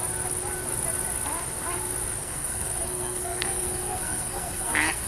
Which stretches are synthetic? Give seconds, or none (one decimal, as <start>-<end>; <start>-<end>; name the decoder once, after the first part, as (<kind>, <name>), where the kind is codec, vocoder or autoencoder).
2.2-5.1 (codec, SNAC)